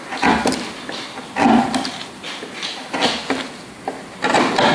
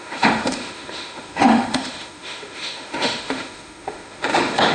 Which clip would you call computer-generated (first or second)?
second